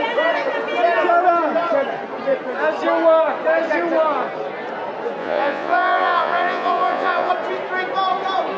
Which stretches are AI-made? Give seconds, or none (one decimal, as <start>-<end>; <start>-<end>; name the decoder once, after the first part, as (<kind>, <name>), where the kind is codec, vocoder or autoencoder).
5.2-7.3 (vocoder, Vocos)